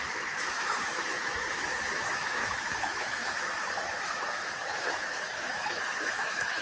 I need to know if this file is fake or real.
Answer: fake